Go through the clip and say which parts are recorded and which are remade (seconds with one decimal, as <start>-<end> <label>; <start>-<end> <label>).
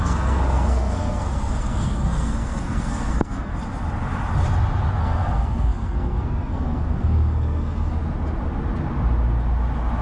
0.0-3.5 remade; 3.5-5.0 recorded; 5.0-8.0 remade; 8.0-10.0 recorded